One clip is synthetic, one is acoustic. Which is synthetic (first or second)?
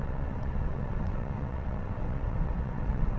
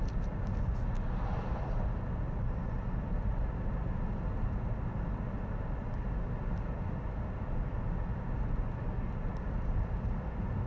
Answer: first